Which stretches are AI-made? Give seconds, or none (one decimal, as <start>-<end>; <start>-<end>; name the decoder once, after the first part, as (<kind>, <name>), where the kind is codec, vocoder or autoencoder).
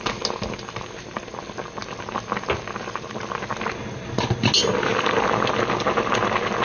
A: none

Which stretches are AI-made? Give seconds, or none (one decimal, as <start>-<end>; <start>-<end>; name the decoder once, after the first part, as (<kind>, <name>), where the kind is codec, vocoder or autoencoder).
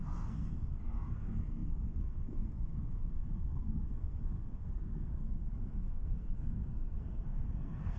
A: 0.0-8.0 (codec, SNAC)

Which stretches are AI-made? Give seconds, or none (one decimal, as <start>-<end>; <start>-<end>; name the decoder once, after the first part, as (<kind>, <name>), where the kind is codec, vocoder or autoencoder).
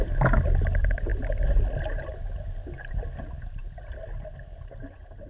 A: none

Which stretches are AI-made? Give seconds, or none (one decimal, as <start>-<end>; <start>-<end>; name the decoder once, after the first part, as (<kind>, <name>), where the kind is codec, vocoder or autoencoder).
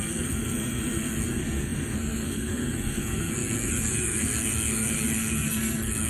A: 0.0-6.1 (codec, SNAC)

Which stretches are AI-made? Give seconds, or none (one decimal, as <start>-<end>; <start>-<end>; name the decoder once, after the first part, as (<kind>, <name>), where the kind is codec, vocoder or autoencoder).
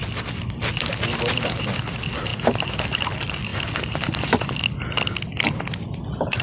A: none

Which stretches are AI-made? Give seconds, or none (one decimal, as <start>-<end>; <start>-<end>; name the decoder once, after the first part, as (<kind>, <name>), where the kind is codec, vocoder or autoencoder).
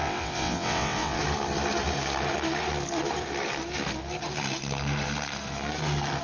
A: 0.0-1.2 (vocoder, WaveNeXt)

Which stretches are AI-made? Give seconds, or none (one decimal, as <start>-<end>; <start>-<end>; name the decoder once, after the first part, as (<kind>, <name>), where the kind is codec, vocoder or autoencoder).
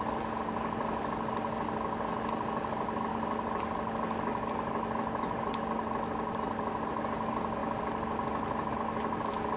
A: none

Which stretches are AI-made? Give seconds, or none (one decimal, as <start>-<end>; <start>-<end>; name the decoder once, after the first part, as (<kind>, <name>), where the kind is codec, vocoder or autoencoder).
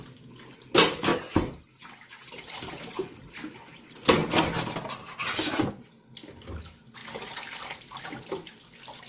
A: none